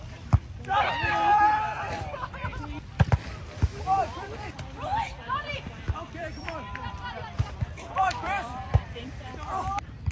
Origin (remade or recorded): remade